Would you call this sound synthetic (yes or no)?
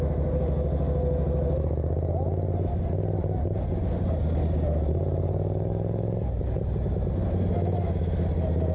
no